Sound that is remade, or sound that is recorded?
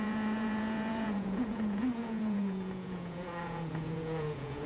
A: remade